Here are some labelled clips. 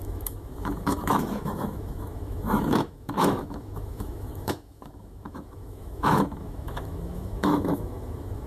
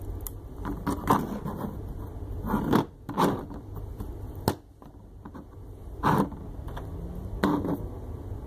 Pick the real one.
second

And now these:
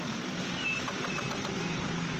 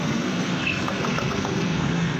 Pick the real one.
first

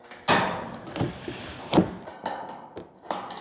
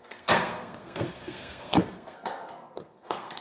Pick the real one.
first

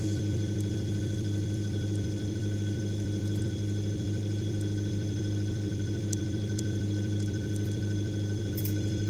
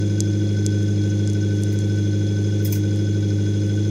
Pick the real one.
second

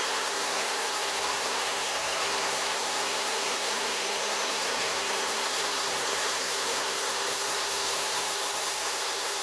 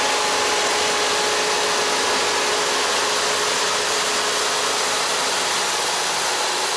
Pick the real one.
second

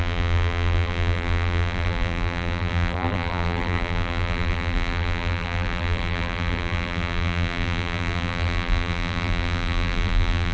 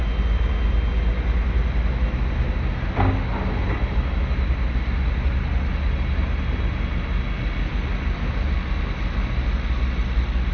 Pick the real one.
second